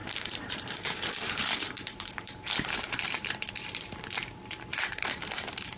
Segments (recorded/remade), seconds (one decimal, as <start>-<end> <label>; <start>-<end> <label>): 0.0-3.5 remade; 3.5-4.7 recorded; 4.7-5.8 remade